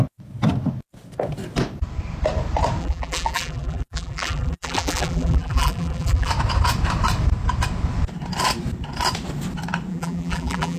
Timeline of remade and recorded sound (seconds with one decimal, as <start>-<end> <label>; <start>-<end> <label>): 0.0-2.8 recorded; 2.8-6.3 remade; 6.3-9.9 recorded; 9.9-10.8 remade